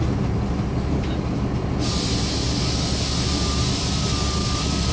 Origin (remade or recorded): recorded